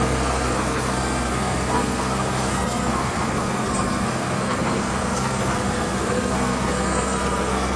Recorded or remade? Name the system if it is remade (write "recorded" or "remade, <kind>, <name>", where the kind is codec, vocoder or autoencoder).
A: remade, codec, SNAC